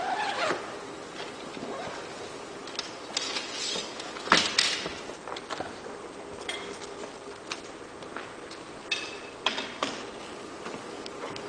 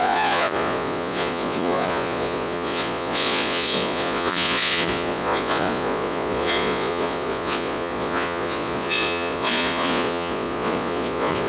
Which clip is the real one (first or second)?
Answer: first